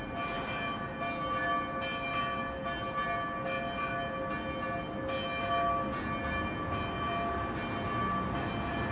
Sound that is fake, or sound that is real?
real